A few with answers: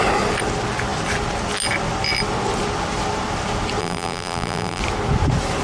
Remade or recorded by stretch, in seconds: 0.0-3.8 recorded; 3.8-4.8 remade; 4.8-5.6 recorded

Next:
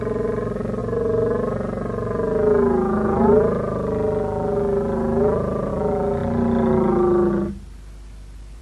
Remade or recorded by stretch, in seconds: 0.0-8.6 recorded

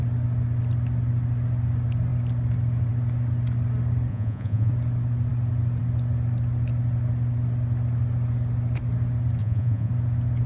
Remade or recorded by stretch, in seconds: 0.0-4.1 recorded; 4.1-4.7 remade; 4.7-9.4 recorded; 9.4-9.9 remade; 9.9-10.5 recorded

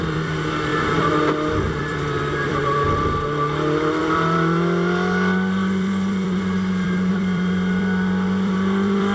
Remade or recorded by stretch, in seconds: 0.0-9.1 remade

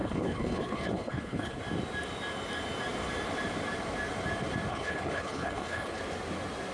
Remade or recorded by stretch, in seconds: 0.0-1.6 remade; 1.6-4.7 recorded; 4.7-6.0 remade; 6.0-6.7 recorded

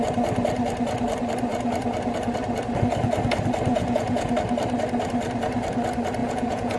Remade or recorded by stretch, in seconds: 0.0-3.7 recorded; 3.7-4.3 remade; 4.3-6.2 recorded; 6.2-6.8 remade

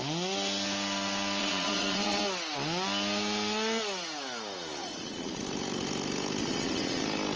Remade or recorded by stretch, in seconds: 0.0-1.4 recorded; 1.4-2.2 remade; 2.2-4.8 recorded; 4.8-5.4 remade; 5.4-6.4 recorded; 6.4-7.0 remade; 7.0-7.4 recorded

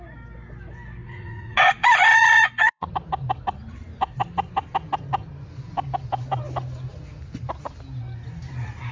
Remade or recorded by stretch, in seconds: 0.0-1.0 recorded; 1.0-2.9 remade; 2.9-8.9 recorded